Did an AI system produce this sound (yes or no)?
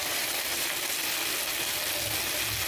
no